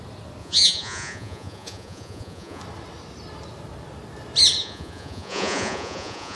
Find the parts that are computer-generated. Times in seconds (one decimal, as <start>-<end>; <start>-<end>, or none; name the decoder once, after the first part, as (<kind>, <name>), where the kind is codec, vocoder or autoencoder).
0.4-2.6 (vocoder, Vocos); 4.6-6.4

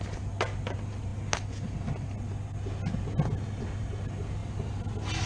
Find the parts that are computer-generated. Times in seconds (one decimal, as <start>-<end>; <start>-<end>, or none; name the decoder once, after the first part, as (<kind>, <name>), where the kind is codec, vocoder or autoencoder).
none

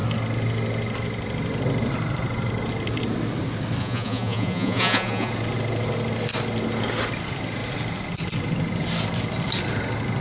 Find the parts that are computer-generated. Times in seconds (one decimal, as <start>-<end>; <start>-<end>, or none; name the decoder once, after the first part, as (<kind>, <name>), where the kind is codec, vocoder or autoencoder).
3.8-5.3 (vocoder, Vocos)

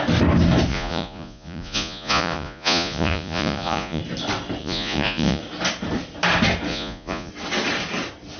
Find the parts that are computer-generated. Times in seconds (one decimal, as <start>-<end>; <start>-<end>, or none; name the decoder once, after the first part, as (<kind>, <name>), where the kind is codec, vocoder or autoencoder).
0.7-4.0 (vocoder, Vocos); 4.6-5.4; 6.7-7.3

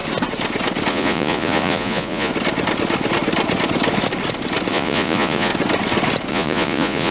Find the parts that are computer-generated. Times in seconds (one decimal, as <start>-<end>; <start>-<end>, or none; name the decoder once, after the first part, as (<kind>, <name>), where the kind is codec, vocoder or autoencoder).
0.9-2.3 (vocoder, Vocos); 4.7-5.5; 6.3-7.1

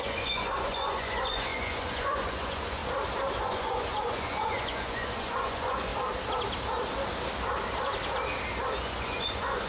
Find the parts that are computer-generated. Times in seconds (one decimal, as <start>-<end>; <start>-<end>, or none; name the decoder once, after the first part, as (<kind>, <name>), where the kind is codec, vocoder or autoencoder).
0.0-2.8 (vocoder, Vocos); 3.4-5.9; 8.8-9.7

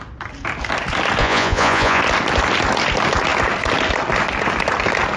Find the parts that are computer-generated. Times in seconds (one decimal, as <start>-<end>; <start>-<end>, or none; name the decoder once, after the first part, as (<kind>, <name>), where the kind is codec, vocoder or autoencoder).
1.2-2.0 (vocoder, Vocos)

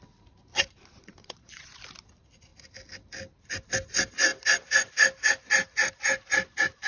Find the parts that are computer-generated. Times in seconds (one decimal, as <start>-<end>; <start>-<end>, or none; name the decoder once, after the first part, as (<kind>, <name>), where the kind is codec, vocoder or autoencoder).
0.5-1.7 (vocoder, Vocos)